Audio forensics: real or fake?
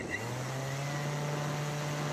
real